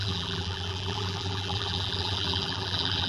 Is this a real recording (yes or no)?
no